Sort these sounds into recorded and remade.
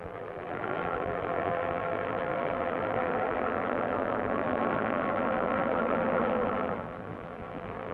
remade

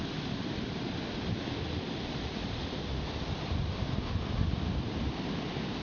remade